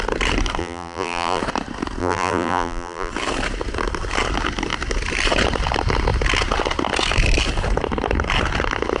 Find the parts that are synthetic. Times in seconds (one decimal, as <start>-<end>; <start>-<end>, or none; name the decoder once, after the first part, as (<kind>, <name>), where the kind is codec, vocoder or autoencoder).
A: 0.6-1.4 (vocoder, BigVGAN v2); 2.0-3.1